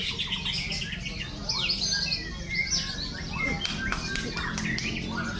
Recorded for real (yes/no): yes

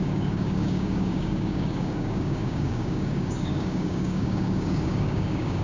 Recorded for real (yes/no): no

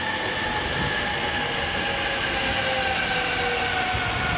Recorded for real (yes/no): yes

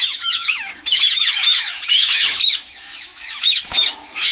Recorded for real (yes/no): no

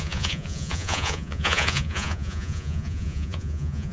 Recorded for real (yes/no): no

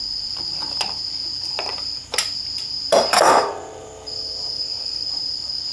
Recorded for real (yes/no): no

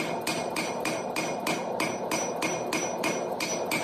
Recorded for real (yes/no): yes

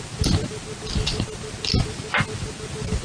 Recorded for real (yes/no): yes